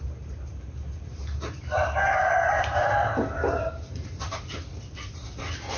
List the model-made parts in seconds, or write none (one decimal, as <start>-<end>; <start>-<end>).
2.2-5.8